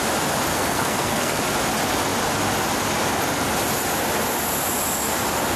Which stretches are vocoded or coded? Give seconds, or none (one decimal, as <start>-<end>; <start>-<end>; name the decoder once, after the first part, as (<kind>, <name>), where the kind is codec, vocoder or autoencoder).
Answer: 0.5-1.4 (codec, SNAC)